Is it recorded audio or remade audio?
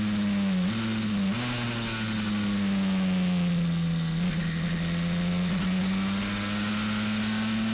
recorded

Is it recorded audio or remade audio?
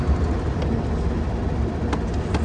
recorded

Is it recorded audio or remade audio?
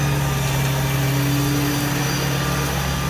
recorded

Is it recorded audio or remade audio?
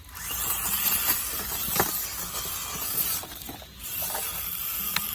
recorded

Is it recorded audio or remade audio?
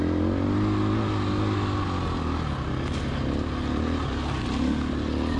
recorded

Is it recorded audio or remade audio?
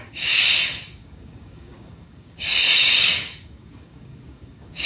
remade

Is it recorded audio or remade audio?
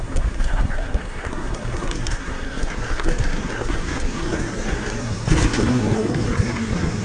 remade